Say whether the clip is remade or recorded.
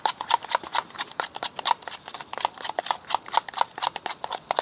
recorded